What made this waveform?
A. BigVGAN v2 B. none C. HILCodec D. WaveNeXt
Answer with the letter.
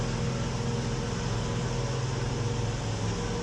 B